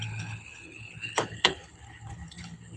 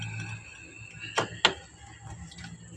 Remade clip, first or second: first